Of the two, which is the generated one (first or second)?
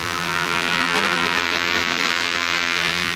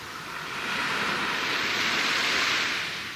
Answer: first